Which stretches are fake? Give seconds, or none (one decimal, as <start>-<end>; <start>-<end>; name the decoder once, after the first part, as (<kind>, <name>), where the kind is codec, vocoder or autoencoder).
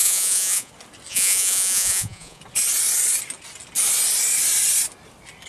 0.0-0.7 (vocoder, Vocos); 1.1-2.4